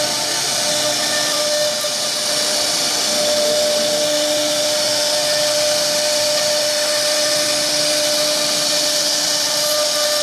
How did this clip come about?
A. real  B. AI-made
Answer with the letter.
A